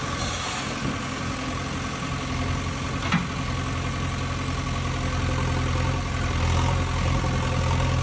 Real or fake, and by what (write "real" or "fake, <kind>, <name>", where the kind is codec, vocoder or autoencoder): real